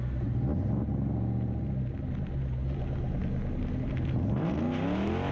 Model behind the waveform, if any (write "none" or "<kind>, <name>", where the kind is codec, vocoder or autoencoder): none